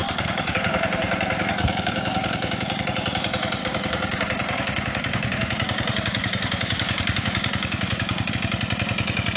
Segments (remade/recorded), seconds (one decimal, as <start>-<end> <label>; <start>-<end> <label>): 0.0-2.8 remade; 2.8-3.6 recorded; 3.6-8.3 remade; 8.3-9.4 recorded